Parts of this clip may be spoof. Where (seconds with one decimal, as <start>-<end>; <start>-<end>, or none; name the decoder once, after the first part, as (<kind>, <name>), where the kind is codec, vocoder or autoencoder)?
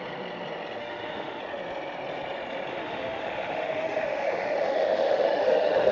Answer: 0.8-1.4 (autoencoder, DAC-VAE); 2.7-5.9